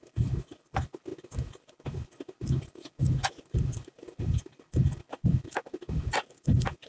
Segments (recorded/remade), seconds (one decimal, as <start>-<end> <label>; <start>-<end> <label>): 0.0-6.9 recorded